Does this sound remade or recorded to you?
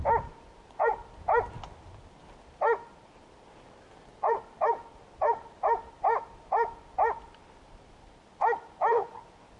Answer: recorded